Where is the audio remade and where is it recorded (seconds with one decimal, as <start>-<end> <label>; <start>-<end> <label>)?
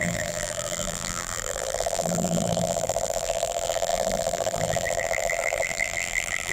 0.0-6.5 remade